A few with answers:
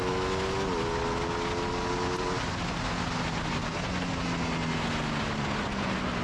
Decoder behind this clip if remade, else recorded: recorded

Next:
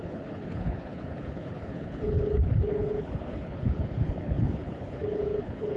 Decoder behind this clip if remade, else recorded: remade, codec, HILCodec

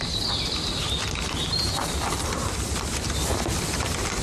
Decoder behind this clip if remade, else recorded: recorded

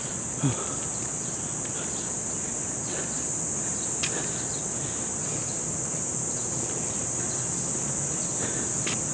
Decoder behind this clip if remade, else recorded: recorded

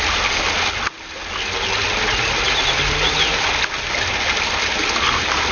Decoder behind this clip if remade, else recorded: recorded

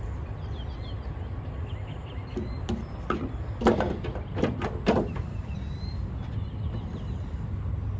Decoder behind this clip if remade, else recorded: recorded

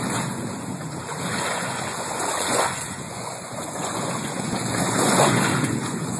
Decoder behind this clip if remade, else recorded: remade, vocoder, Vocos